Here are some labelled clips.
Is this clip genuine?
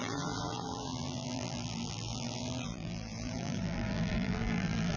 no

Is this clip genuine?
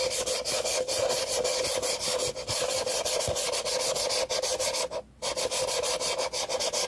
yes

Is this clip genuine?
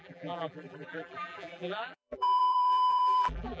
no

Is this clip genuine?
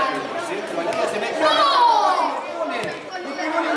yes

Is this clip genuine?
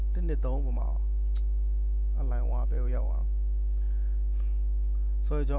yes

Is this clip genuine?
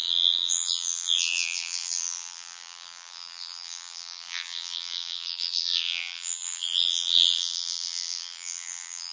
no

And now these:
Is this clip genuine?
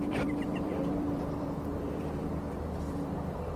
no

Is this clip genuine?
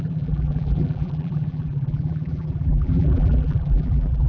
no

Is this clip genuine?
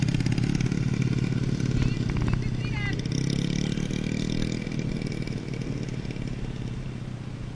yes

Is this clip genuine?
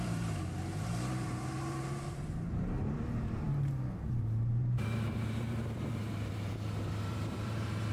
no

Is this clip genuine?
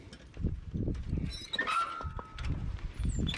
yes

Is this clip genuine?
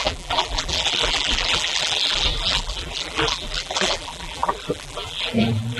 no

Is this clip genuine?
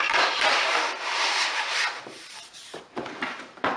no